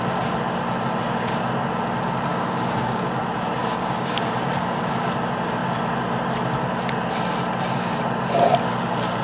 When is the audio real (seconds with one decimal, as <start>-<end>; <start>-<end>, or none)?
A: 0.0-2.3; 3.0-3.6; 5.1-9.2